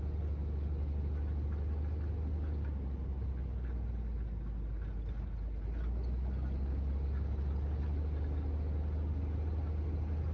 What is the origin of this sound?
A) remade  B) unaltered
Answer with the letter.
B